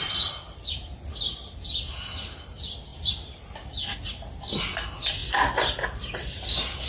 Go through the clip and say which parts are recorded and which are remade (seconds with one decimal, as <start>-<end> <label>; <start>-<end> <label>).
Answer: 0.0-0.6 remade; 0.6-2.9 recorded; 2.9-3.7 remade; 3.7-6.9 recorded